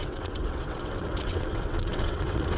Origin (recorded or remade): remade